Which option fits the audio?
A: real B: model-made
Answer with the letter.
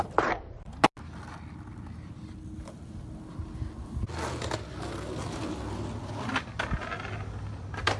A